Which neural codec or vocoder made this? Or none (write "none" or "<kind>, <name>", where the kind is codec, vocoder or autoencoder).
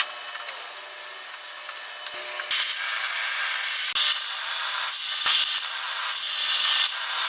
none